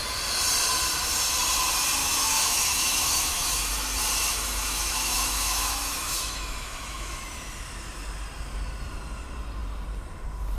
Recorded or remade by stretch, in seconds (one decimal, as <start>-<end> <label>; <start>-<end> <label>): 0.0-2.0 recorded; 2.0-3.7 remade; 3.7-4.3 recorded; 4.3-7.2 remade; 7.2-10.6 recorded